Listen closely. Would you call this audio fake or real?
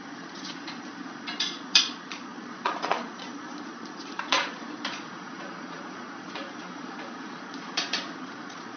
fake